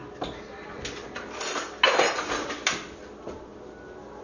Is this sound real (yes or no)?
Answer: yes